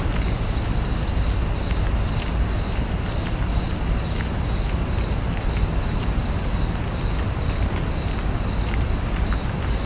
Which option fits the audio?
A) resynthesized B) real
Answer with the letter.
B